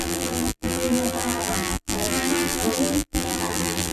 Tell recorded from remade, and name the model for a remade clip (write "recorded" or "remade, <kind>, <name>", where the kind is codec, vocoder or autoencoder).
remade, vocoder, BigVGAN v2